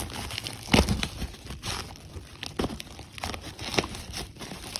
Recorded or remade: recorded